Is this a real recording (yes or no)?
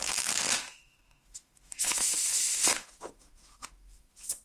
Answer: no